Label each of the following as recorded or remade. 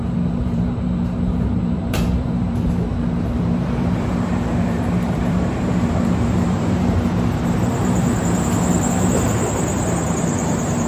remade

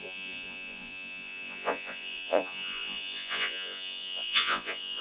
remade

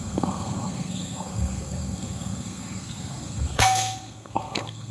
remade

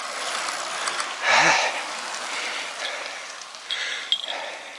recorded